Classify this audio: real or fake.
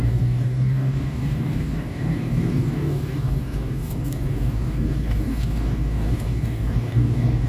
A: fake